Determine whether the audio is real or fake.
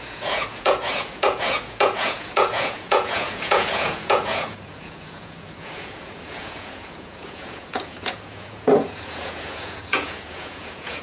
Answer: fake